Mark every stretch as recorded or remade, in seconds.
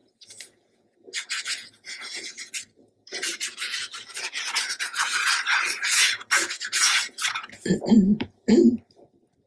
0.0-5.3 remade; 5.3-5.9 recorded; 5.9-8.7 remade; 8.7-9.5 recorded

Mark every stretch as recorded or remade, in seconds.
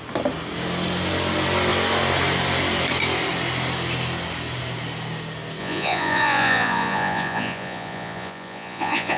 0.0-5.6 recorded; 5.6-9.2 remade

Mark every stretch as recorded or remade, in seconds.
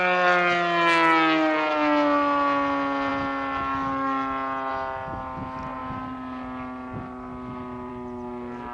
0.0-8.7 recorded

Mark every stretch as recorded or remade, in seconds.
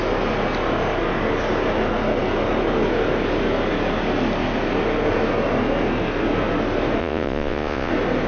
0.0-7.0 recorded; 7.0-7.9 remade; 7.9-8.3 recorded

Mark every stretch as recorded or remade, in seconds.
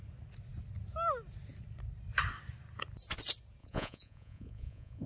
0.0-3.6 recorded; 3.6-5.1 remade